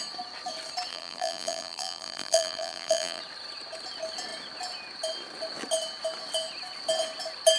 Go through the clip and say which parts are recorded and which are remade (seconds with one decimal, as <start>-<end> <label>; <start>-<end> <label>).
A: 0.0-0.9 recorded; 0.9-3.2 remade; 3.2-7.6 recorded